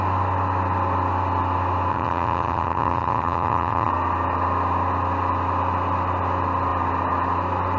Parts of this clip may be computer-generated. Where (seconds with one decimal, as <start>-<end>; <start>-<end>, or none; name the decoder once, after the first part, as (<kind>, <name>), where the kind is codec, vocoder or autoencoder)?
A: 1.9-3.9 (vocoder, HiFi-GAN)

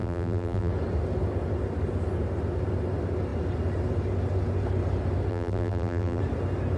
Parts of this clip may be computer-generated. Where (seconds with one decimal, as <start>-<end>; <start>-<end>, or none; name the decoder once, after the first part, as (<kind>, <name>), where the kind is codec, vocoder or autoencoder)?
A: 0.0-0.7 (vocoder, BigVGAN v2); 5.3-6.2

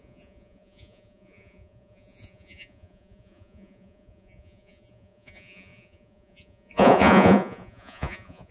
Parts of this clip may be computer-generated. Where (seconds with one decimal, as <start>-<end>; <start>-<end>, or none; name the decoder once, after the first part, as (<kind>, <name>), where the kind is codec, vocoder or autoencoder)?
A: 0.0-8.5 (vocoder, Vocos)

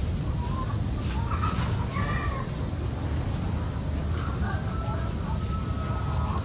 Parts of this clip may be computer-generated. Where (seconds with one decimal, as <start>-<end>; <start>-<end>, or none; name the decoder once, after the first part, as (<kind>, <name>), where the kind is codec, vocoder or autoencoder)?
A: none

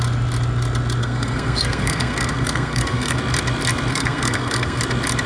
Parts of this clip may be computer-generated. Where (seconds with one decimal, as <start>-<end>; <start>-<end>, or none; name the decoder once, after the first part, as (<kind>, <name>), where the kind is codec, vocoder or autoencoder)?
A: 1.0-3.2 (codec, SNAC); 3.9-4.8

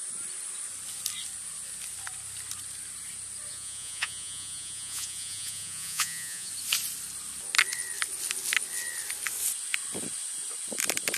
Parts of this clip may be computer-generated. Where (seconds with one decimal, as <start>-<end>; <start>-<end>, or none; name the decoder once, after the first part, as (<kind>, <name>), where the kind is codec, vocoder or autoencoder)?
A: 3.5-6.5 (vocoder, Vocos)

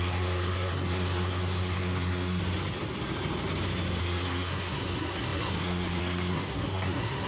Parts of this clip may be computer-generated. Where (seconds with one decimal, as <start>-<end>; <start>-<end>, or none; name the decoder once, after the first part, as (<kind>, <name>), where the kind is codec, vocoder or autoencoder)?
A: 0.0-2.4 (codec, SNAC); 4.0-7.3